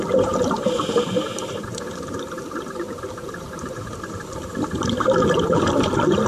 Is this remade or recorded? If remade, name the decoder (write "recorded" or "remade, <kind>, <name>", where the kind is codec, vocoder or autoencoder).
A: remade, vocoder, BigVGAN v2